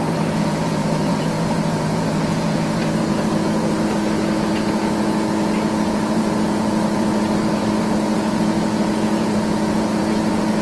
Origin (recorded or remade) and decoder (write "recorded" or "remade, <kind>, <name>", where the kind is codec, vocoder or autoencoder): remade, vocoder, Vocos